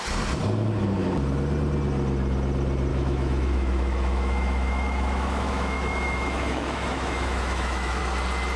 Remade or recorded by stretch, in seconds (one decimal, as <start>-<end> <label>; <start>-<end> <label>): 0.0-2.9 recorded; 2.9-8.0 remade; 8.0-8.6 recorded